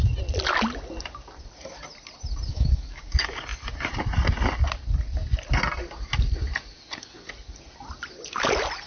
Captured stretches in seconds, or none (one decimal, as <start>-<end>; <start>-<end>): 0.0-2.5; 3.0-8.9